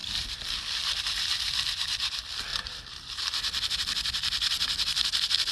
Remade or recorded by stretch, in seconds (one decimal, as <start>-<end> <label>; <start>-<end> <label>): 0.0-1.0 remade; 1.0-2.5 recorded; 2.5-3.3 remade; 3.3-5.5 recorded